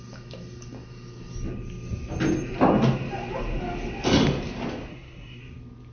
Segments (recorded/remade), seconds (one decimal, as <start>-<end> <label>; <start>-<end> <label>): 0.0-4.9 recorded; 4.9-5.4 remade; 5.4-5.9 recorded